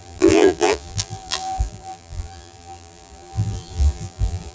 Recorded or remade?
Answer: remade